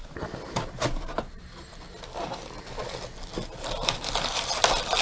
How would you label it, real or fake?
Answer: real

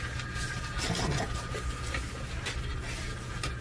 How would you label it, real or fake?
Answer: real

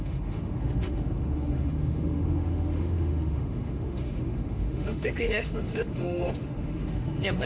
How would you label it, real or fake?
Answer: fake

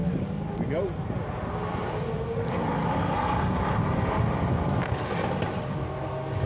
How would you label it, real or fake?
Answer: real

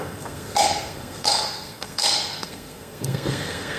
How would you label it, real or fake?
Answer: fake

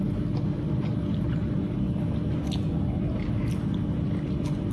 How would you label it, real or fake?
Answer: real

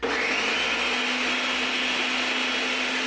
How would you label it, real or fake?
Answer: real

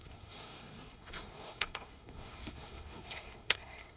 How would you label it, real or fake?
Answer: fake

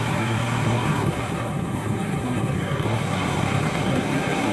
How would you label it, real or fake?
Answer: fake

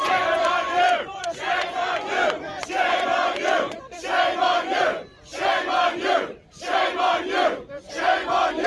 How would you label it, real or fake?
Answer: fake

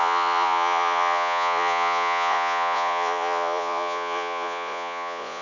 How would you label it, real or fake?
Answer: fake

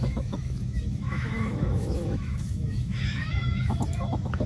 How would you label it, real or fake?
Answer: fake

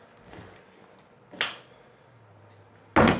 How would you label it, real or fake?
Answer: real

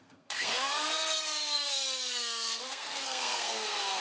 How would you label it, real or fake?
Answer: fake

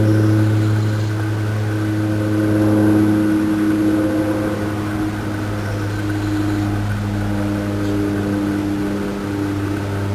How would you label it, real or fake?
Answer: real